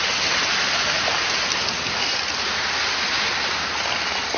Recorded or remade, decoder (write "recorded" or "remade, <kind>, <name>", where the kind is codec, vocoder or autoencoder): recorded